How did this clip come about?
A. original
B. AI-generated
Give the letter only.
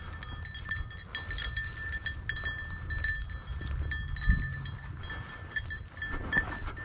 A